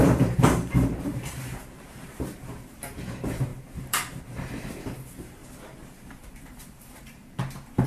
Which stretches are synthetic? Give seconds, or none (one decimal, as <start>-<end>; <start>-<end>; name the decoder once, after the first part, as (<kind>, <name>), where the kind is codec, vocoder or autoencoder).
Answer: 0.0-1.6 (vocoder, BigVGAN v2); 2.1-5.4; 6.2-7.9